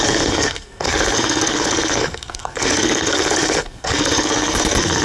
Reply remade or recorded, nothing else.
remade